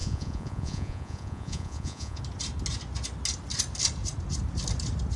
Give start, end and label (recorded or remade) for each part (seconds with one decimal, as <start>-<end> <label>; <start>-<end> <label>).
0.0-2.2 remade; 2.2-5.2 recorded